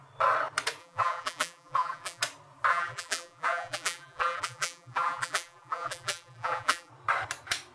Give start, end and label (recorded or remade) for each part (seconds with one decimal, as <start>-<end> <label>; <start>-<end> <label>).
0.0-0.8 recorded; 0.8-2.2 remade; 2.2-2.7 recorded; 2.7-6.9 remade; 6.9-7.7 recorded